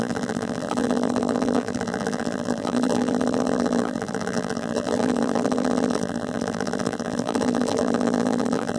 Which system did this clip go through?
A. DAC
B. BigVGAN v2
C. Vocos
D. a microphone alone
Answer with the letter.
B